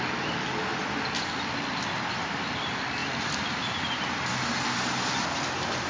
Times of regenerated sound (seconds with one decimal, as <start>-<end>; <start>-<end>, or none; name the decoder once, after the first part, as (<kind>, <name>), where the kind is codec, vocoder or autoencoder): none